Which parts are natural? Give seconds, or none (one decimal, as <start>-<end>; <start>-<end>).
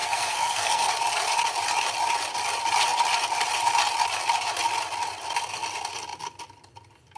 0.9-7.2